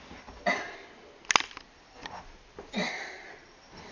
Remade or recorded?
recorded